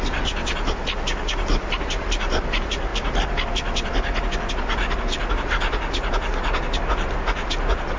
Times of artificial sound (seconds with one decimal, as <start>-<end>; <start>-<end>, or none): none